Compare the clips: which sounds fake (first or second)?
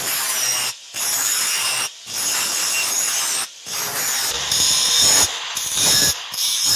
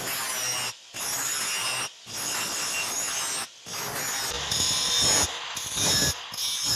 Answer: first